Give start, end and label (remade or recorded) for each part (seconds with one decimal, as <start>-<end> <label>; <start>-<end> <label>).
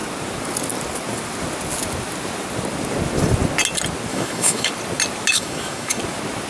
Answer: 0.0-4.1 recorded; 4.1-4.7 remade; 4.7-5.3 recorded; 5.3-6.0 remade; 6.0-6.5 recorded